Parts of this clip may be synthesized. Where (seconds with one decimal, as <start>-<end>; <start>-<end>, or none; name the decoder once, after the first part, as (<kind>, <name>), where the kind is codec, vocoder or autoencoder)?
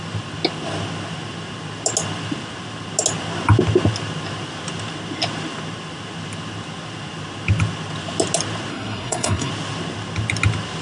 8.7-9.5 (codec, SNAC)